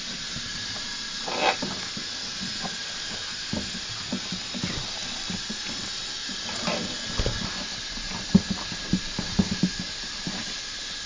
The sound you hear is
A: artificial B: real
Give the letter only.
B